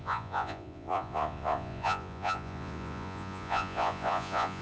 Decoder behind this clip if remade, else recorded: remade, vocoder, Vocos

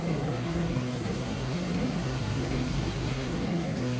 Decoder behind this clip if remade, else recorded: remade, codec, SNAC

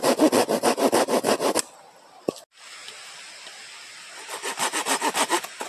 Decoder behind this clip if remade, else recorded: recorded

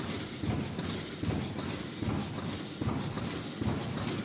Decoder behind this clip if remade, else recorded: recorded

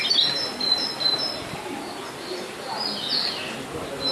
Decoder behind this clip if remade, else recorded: recorded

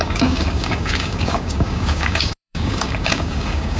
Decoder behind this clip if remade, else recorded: remade, codec, DAC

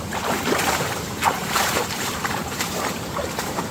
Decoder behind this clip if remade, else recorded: remade, vocoder, BigVGAN v2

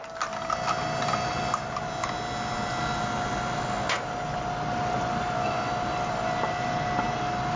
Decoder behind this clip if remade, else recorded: recorded